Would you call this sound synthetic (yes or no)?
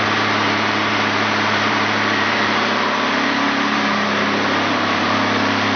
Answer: yes